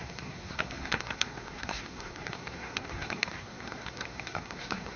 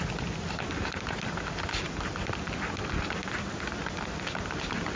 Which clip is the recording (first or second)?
second